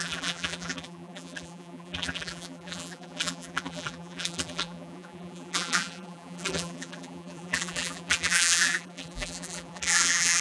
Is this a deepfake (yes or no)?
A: yes